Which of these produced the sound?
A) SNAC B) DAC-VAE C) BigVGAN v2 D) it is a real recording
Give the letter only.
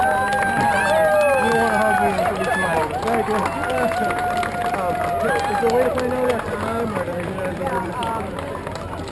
D